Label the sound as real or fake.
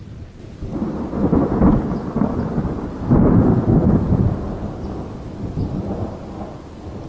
real